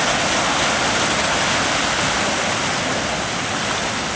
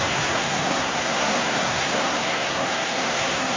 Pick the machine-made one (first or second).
second